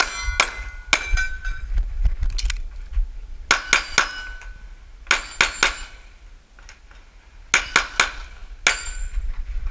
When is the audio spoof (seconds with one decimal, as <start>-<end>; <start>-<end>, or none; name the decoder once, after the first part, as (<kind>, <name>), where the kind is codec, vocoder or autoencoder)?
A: none